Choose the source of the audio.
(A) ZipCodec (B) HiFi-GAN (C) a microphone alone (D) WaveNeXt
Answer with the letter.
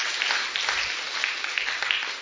C